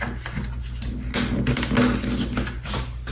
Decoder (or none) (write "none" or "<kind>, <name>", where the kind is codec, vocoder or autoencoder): none